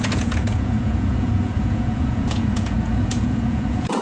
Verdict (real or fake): fake